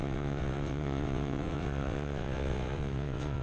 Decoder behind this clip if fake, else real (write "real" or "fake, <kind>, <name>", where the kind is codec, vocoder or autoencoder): fake, vocoder, WaveNeXt